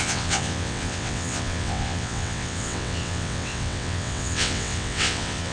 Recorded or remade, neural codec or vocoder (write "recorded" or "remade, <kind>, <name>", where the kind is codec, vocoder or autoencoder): remade, vocoder, WaveNeXt